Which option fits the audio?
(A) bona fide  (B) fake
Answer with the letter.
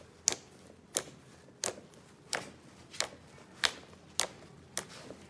A